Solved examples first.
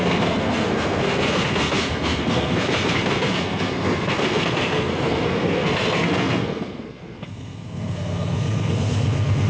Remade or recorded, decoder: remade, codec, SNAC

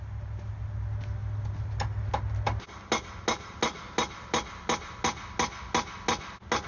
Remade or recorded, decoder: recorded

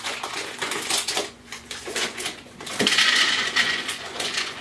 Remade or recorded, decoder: remade, vocoder, Vocos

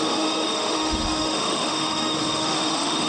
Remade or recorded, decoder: remade, autoencoder, DAC-VAE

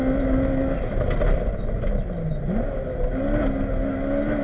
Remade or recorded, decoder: recorded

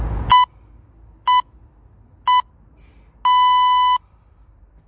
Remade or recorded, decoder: recorded